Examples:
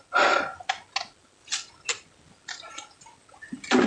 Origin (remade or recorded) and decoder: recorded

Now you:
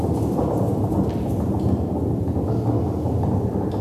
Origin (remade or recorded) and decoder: recorded